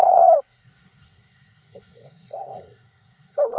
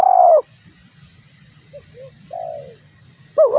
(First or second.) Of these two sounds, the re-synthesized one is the first